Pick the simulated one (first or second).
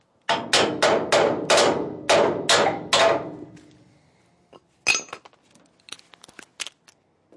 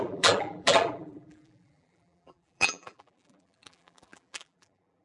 second